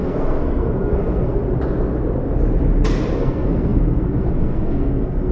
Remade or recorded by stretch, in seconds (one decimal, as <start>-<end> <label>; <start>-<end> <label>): 0.0-1.4 remade; 1.4-3.2 recorded; 3.2-5.3 remade